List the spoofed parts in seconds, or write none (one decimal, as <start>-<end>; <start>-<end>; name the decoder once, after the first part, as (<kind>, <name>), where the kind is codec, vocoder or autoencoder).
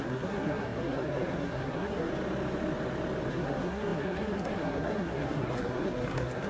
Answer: 0.0-2.1 (codec, SNAC); 3.3-6.5